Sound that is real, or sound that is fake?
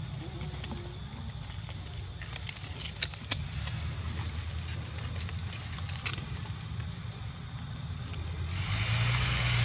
real